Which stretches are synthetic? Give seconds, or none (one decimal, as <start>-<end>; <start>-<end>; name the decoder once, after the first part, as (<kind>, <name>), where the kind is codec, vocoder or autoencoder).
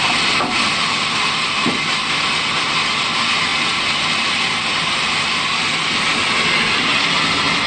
none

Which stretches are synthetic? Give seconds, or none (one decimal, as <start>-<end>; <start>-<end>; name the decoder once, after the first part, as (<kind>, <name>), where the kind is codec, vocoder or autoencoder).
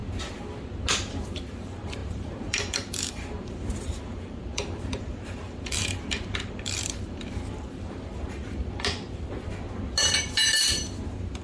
1.1-8.6 (vocoder, BigVGAN v2); 10.2-11.4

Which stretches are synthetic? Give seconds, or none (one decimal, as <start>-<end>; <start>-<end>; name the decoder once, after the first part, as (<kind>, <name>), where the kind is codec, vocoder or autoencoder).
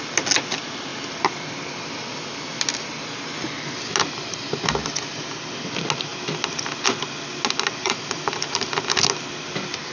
7.8-8.7 (vocoder, BigVGAN v2)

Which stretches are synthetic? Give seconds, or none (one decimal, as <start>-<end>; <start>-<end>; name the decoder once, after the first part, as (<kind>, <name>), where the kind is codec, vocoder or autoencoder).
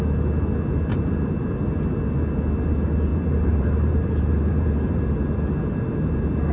3.1-5.5 (vocoder, BigVGAN v2)